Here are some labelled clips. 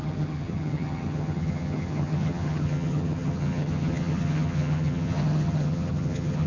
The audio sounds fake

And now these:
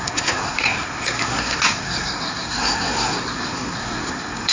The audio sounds fake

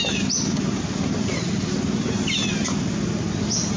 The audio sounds real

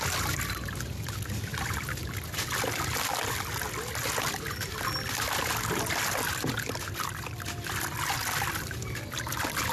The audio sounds real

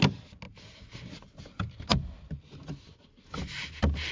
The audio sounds real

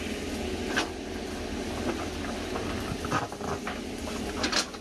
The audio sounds real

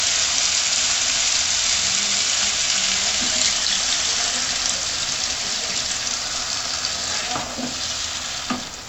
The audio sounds real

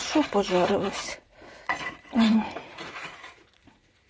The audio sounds fake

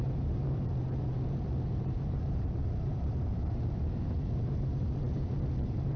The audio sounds fake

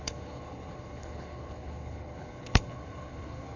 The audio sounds fake